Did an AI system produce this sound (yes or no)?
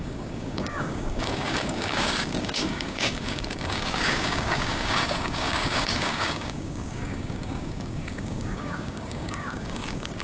yes